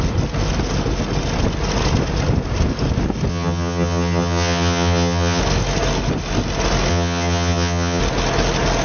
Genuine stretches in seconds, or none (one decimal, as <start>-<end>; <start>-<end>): 0.0-3.3; 5.4-6.9; 8.0-8.8

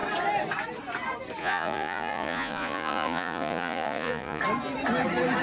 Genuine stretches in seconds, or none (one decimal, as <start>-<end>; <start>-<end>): 0.0-1.4; 4.4-5.4

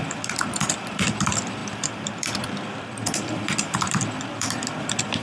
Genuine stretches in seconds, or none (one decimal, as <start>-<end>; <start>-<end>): none

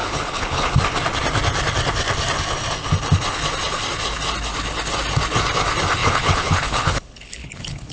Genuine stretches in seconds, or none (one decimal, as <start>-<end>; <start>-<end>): 0.7-6.0

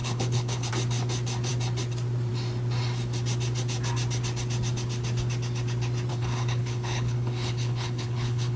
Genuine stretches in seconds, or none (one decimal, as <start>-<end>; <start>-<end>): 0.7-6.1

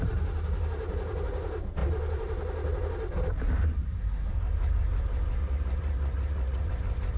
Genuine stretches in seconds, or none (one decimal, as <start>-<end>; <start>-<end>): 0.0-5.4; 6.7-7.2

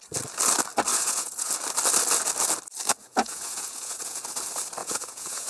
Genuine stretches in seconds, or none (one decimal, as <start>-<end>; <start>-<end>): 0.0-0.9; 1.5-3.0; 4.2-4.8

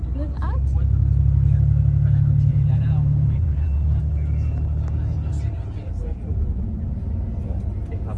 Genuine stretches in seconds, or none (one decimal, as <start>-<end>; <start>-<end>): 0.0-2.5; 4.0-8.2